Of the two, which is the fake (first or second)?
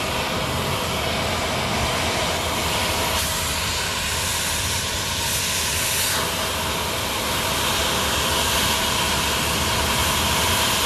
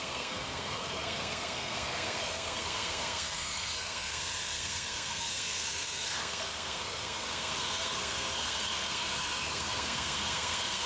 second